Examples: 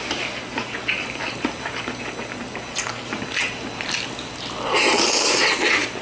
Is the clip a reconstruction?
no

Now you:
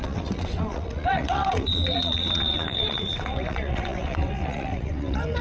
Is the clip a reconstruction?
yes